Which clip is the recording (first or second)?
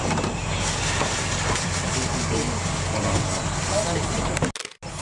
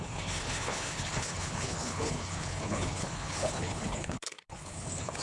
first